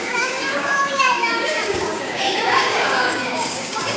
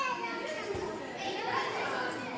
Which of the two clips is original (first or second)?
second